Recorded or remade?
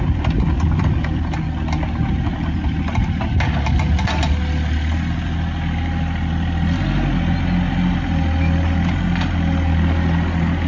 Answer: recorded